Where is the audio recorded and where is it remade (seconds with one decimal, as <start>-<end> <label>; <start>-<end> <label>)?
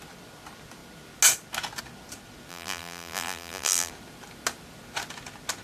0.0-2.5 recorded; 2.5-3.9 remade; 3.9-5.6 recorded